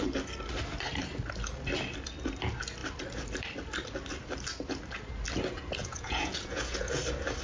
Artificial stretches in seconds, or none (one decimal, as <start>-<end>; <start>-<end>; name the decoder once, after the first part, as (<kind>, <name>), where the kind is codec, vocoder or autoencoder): 5.8-7.0 (vocoder, Vocos)